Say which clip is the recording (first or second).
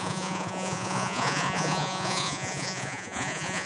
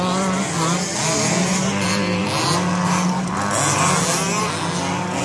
second